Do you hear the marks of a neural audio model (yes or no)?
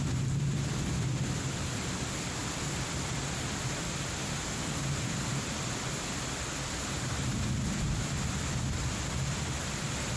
yes